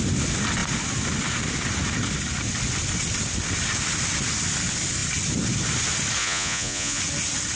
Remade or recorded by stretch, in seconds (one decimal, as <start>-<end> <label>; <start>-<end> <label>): 0.0-6.2 recorded; 6.2-7.0 remade; 7.0-7.6 recorded